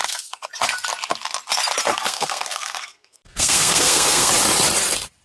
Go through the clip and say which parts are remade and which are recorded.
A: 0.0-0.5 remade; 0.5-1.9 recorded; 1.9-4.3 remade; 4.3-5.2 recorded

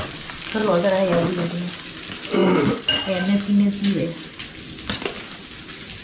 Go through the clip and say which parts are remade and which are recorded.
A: 0.0-6.0 recorded

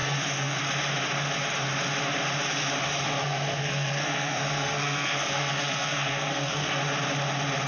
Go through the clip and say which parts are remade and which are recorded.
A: 0.0-0.6 remade; 0.6-3.2 recorded; 3.2-6.8 remade; 6.8-7.7 recorded